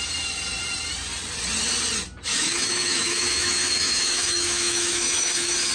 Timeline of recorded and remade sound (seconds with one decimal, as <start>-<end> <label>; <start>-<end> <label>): 0.0-2.3 recorded; 2.3-5.7 remade